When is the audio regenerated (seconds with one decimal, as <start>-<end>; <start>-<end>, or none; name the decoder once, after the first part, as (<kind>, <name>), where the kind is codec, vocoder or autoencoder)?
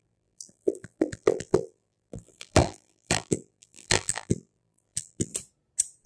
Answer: 0.0-5.3 (vocoder, BigVGAN v2)